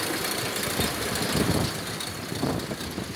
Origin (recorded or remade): recorded